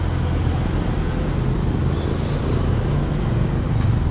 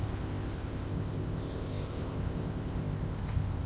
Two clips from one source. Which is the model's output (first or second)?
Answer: second